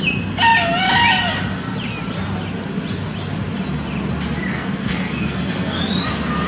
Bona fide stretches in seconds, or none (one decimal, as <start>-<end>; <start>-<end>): 0.0-4.5; 5.8-6.5